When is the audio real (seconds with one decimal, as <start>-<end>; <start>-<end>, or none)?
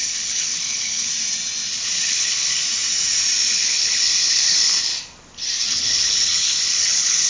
1.1-1.7; 2.6-3.5; 4.9-5.7